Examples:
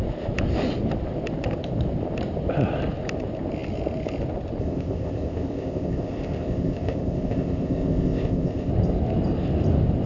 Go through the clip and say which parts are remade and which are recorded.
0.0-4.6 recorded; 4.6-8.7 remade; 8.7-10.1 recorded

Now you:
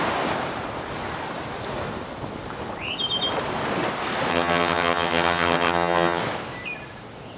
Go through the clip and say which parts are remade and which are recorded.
0.0-4.3 recorded; 4.3-6.2 remade; 6.2-7.4 recorded

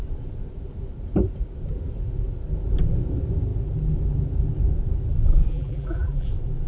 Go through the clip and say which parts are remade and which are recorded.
0.0-5.5 recorded; 5.5-6.3 remade; 6.3-6.7 recorded